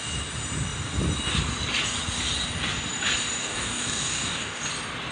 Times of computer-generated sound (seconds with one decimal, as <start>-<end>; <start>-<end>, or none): 3.4-4.6